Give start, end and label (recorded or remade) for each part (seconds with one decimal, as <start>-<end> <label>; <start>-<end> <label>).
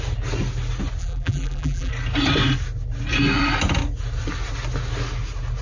0.0-1.0 recorded; 1.0-1.9 remade; 1.9-5.6 recorded